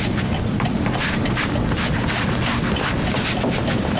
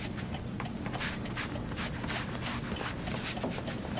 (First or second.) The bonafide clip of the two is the second